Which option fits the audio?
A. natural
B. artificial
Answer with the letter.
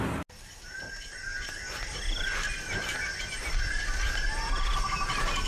A